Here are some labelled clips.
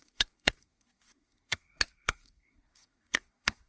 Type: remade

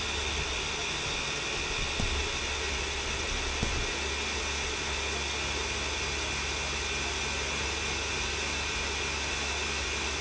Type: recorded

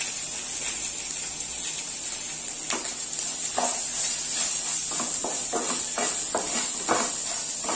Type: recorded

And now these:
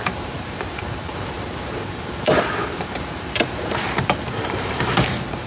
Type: remade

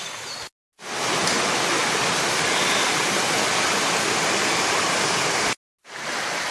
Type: recorded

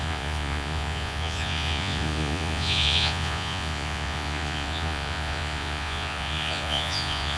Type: remade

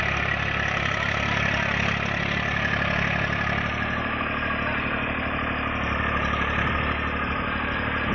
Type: recorded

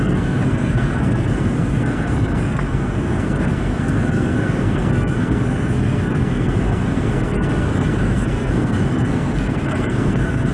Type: remade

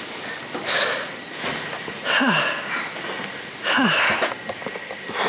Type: recorded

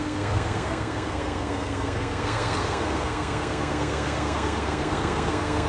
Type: remade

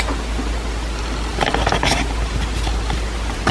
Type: recorded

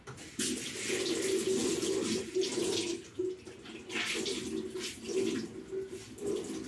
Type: recorded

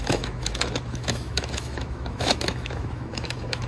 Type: remade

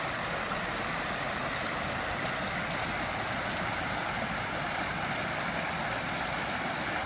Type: recorded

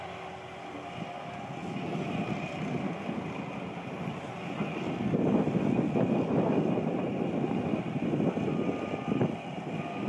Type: recorded